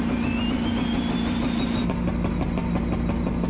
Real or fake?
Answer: real